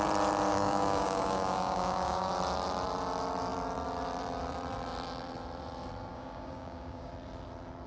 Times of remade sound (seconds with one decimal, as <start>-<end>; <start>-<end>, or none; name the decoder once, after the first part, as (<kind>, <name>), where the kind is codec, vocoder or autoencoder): 0.5-2.3 (codec, DAC); 6.1-7.1